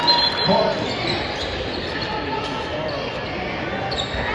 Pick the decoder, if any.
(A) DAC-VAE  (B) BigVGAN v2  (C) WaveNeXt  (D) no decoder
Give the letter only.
D